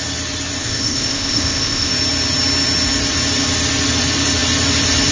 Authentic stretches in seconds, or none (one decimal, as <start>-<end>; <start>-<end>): 0.0-0.6; 1.9-5.1